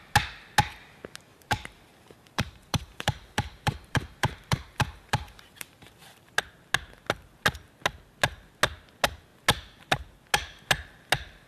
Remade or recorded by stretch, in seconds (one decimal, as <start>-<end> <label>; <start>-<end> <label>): 0.0-1.3 recorded; 1.3-6.3 remade; 6.3-11.5 recorded